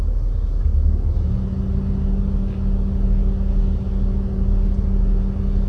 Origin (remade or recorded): recorded